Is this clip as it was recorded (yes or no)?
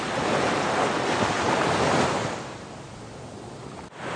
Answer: yes